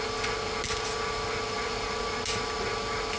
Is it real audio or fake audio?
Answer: real